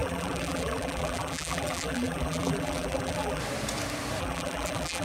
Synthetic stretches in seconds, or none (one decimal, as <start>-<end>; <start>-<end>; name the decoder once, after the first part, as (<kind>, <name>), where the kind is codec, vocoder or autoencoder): 0.0-3.4 (vocoder, BigVGAN v2); 4.2-5.0